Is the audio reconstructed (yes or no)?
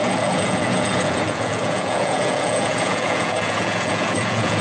yes